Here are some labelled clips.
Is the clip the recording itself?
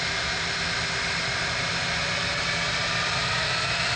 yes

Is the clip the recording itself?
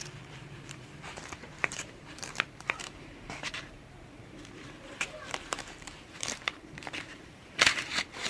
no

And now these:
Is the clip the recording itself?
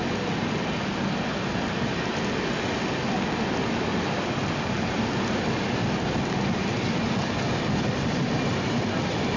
yes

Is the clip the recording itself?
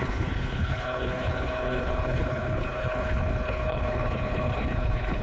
no